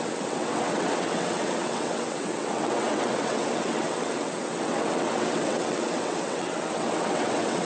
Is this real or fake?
fake